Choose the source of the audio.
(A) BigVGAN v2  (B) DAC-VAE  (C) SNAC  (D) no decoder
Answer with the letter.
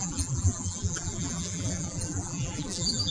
A